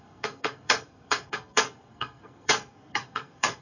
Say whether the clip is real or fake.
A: fake